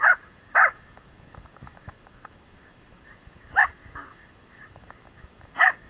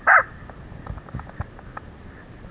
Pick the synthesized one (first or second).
first